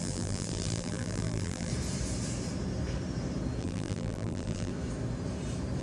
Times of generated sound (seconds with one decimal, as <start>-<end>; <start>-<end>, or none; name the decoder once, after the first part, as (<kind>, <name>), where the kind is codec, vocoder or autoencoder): 0.0-1.7 (vocoder, BigVGAN v2); 3.6-4.7